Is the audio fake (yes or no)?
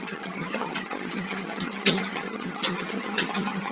yes